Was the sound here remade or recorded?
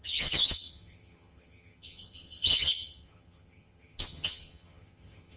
remade